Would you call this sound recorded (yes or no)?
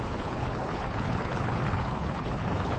no